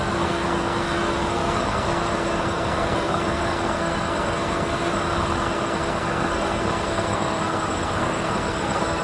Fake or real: fake